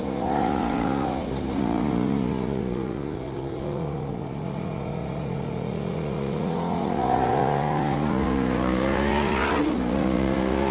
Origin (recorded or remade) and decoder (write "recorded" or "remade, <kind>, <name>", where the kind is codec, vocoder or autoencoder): remade, vocoder, Vocos